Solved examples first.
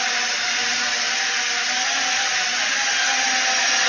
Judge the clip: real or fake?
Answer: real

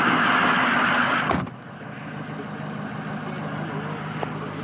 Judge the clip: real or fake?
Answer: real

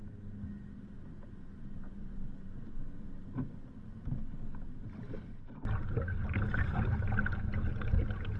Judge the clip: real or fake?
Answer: real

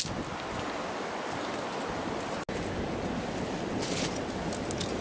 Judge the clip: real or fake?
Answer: real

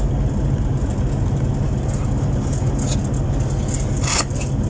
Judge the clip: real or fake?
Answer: real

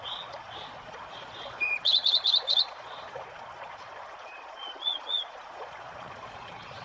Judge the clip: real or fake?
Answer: fake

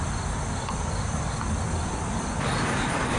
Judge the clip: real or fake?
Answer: real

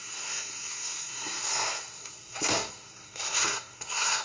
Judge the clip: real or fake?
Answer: fake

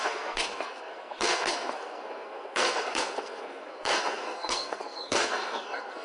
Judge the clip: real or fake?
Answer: fake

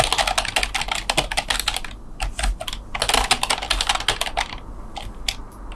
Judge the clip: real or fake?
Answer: real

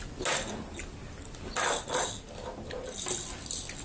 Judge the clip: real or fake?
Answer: real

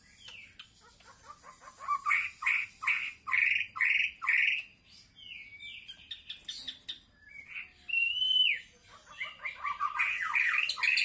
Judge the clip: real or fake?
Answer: real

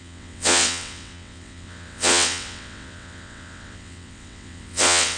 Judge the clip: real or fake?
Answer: fake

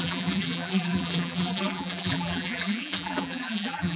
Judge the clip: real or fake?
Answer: fake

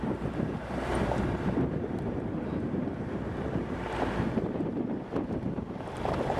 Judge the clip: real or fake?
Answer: fake